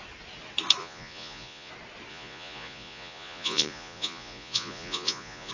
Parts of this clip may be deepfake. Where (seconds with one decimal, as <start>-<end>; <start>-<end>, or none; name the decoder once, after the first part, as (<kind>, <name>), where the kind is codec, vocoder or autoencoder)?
0.8-1.7 (vocoder, Vocos); 2.1-5.5